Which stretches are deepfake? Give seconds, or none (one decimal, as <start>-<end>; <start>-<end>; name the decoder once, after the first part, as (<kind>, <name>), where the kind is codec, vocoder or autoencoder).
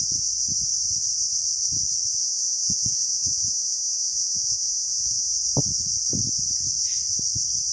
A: 2.2-5.3 (vocoder, Vocos)